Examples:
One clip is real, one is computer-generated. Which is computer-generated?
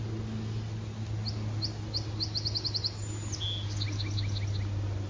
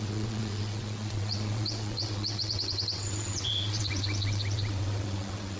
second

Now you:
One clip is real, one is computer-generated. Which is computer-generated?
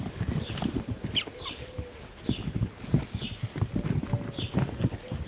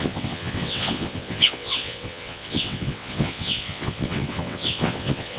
second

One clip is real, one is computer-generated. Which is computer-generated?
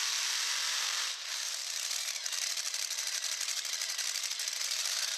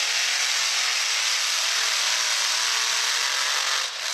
first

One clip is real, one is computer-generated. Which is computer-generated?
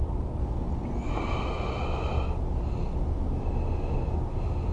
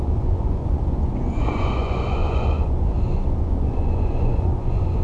second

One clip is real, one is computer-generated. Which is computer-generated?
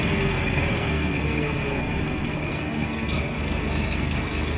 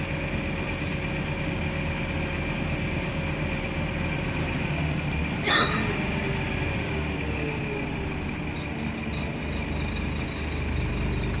first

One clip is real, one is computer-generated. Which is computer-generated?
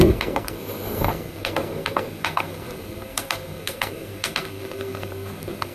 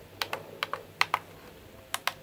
first